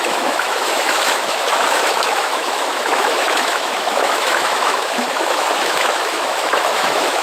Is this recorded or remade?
remade